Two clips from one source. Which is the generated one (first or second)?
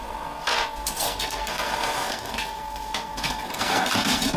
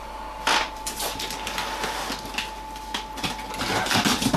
first